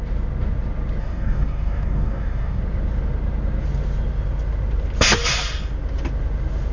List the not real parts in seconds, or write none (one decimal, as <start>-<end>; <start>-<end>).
1.0-2.6